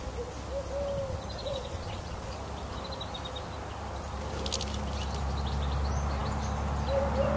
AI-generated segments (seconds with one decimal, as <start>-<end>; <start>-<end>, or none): 1.4-2.3